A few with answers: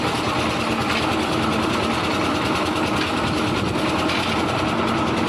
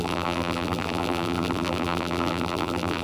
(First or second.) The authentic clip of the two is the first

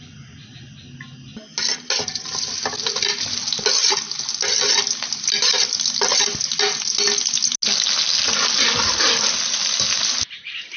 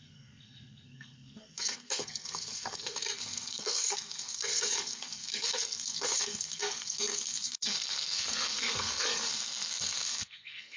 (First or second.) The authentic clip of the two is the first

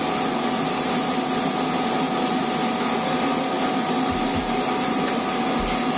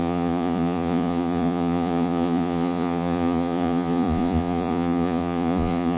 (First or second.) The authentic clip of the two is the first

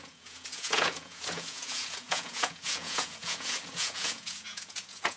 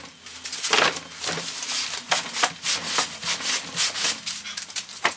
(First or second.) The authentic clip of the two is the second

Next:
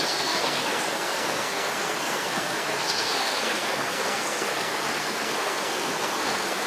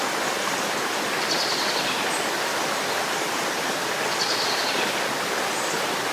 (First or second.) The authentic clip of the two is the second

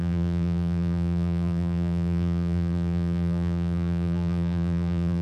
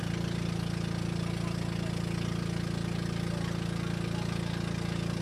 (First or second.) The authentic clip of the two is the second